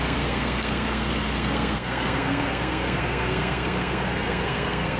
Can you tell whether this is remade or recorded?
remade